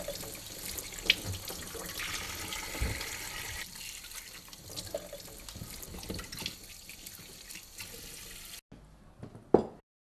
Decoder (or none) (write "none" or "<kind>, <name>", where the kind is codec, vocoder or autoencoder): none